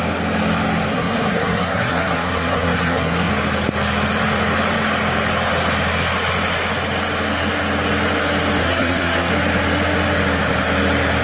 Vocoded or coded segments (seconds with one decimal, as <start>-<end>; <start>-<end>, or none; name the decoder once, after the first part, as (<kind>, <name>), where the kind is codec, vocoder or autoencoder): 0.9-3.3 (codec, SNAC); 8.6-9.3